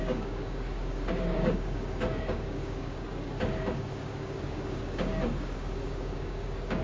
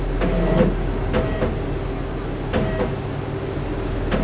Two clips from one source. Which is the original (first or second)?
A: second